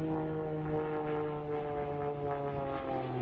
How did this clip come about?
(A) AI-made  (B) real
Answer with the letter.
B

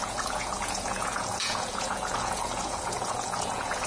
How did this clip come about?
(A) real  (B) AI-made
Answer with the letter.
B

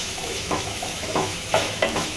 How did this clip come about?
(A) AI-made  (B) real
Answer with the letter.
A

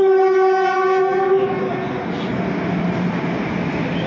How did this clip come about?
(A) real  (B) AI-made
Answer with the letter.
A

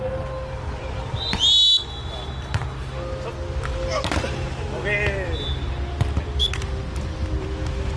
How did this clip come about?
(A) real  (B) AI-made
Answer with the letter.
A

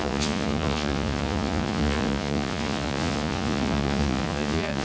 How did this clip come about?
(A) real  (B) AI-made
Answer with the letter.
B